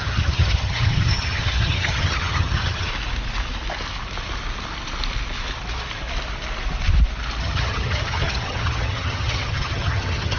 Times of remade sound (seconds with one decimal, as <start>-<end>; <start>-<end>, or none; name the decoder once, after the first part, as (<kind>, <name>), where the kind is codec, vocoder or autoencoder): 0.0-2.9 (vocoder, HiFi-GAN); 7.4-10.4